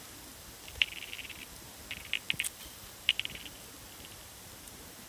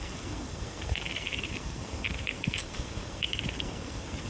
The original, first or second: first